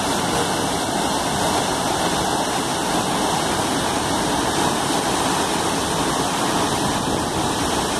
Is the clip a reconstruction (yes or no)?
no